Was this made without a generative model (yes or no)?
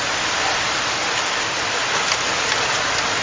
yes